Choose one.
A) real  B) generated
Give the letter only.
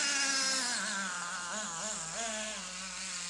A